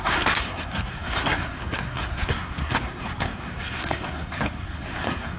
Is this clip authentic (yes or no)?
no